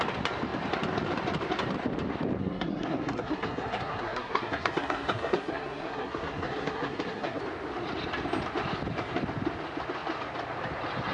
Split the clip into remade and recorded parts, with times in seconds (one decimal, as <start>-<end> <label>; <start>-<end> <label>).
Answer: 0.0-2.4 recorded; 2.4-7.4 remade; 7.4-11.1 recorded

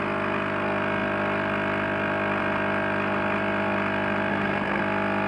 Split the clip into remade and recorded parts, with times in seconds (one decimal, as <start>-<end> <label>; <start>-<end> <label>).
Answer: 0.0-4.3 recorded; 4.3-4.8 remade; 4.8-5.3 recorded

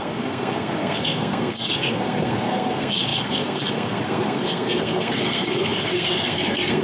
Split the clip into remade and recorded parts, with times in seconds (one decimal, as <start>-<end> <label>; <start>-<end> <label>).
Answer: 0.0-6.8 remade

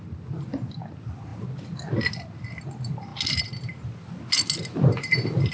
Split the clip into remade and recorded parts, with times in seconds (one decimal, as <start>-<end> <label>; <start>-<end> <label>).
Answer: 0.0-5.5 recorded

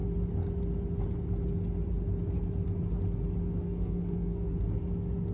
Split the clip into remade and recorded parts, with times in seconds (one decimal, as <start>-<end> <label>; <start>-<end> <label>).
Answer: 0.0-3.6 recorded; 3.6-4.5 remade; 4.5-5.3 recorded

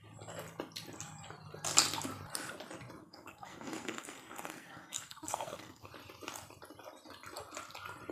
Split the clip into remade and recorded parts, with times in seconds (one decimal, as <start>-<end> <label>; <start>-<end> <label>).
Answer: 0.0-3.0 recorded; 3.0-5.9 remade; 5.9-8.1 recorded

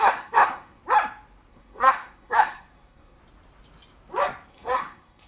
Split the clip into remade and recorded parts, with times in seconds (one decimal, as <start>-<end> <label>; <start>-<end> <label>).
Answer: 0.0-0.8 remade; 0.8-1.5 recorded; 1.5-3.2 remade; 3.2-4.5 recorded; 4.5-5.3 remade